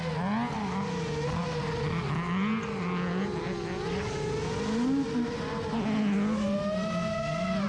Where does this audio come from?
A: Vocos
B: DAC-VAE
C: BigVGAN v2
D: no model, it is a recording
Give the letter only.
D